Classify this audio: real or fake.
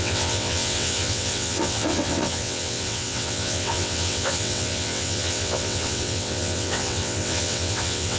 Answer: fake